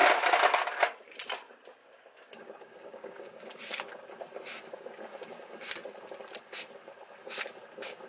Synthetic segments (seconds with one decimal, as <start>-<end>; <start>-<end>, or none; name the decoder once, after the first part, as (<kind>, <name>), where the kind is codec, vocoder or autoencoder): 1.8-3.6 (codec, DAC); 5.1-5.7